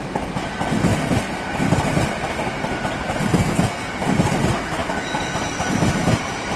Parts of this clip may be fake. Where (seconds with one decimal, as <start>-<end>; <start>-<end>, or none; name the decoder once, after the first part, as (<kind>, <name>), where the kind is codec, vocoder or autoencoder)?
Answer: 3.3-3.9 (codec, SNAC)